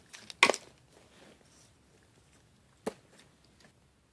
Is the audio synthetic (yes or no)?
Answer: no